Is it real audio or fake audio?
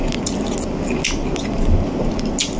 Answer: real